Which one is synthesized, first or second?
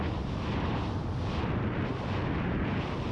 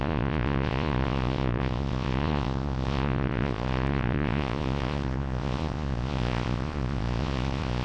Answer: second